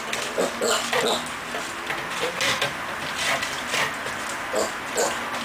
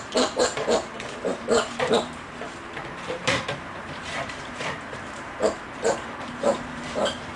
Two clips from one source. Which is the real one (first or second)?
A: first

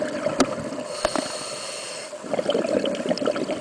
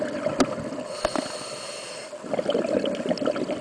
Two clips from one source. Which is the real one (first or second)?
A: second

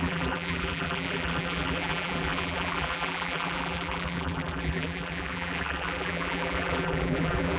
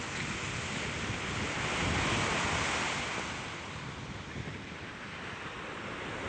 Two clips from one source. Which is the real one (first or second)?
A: second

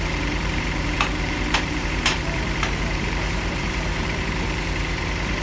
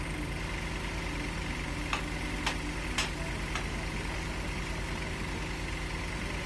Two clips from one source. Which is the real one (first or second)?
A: second